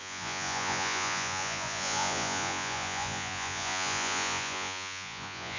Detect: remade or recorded remade